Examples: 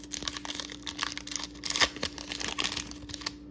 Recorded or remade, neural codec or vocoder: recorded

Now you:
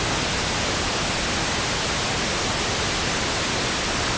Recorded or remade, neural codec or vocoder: recorded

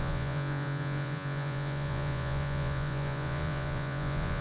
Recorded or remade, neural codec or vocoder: remade, vocoder, Vocos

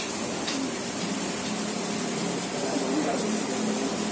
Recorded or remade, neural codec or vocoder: recorded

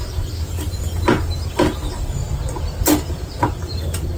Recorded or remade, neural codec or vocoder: recorded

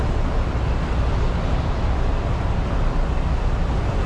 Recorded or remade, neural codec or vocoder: remade, vocoder, BigVGAN v2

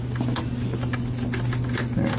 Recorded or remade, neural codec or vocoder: recorded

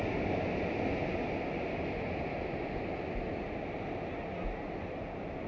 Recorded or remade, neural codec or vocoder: recorded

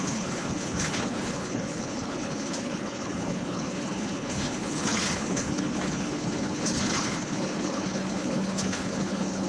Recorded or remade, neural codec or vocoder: remade, codec, HILCodec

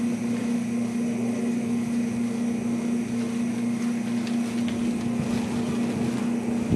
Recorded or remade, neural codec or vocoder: recorded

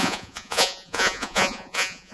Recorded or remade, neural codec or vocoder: remade, vocoder, Vocos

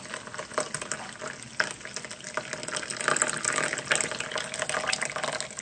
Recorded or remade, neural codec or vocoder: recorded